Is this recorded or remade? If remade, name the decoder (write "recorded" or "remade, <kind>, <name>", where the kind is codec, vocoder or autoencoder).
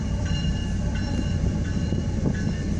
remade, vocoder, BigVGAN v2